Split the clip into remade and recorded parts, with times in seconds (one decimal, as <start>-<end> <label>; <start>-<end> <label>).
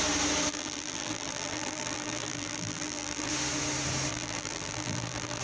0.0-0.5 recorded; 0.5-3.3 remade; 3.3-4.1 recorded; 4.1-5.4 remade